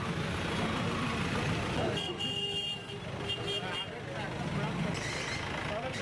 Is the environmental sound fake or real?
real